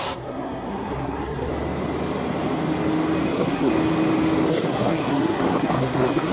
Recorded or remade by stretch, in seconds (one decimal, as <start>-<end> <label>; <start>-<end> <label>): 0.0-1.5 remade; 1.5-3.3 recorded; 3.3-3.7 remade; 3.7-4.5 recorded; 4.5-6.3 remade